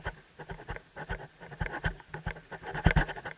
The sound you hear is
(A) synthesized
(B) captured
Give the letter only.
B